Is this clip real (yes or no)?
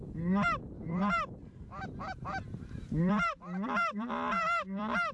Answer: no